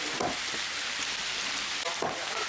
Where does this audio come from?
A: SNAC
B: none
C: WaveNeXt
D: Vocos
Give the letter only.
B